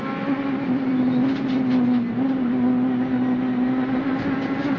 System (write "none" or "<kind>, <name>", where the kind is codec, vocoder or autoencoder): none